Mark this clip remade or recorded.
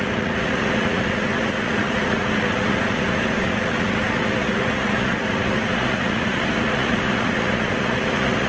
remade